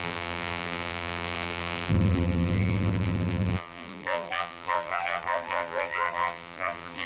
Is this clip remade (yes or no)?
yes